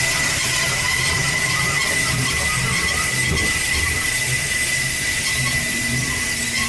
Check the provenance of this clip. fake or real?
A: real